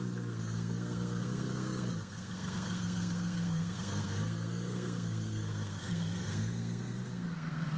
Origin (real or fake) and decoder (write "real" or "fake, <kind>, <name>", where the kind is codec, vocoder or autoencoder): fake, codec, SNAC